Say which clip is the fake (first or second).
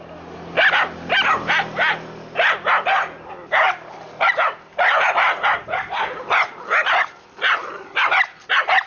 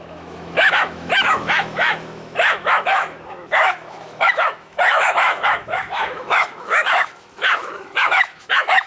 second